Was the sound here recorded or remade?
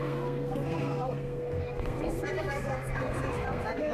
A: remade